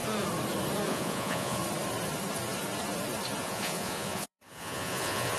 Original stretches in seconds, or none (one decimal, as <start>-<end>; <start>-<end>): 0.0-0.9; 1.6-3.4